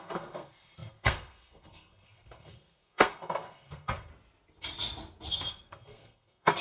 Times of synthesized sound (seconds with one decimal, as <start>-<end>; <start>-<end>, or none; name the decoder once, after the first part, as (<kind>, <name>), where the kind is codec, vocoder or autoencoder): 0.0-4.1 (codec, SNAC); 5.3-6.6